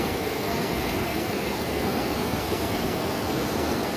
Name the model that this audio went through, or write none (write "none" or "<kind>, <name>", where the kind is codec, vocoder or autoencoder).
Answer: codec, SNAC